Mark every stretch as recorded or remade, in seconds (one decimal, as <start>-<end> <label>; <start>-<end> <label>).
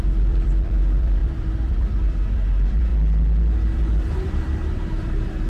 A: 0.0-2.9 remade; 2.9-4.1 recorded; 4.1-5.5 remade